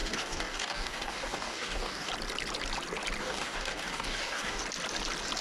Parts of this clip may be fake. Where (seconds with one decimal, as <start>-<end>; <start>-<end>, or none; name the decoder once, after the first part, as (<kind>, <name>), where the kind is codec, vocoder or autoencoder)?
0.0-2.1 (codec, DAC); 3.2-4.6